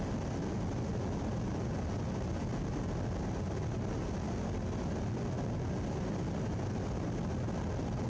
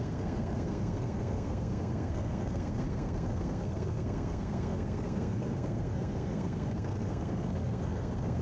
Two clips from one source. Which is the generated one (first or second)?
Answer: second